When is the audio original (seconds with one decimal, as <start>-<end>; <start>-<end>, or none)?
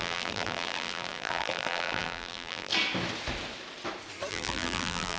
2.7-4.3